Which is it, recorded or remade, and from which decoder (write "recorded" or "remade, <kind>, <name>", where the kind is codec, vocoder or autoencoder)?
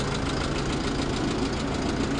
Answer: recorded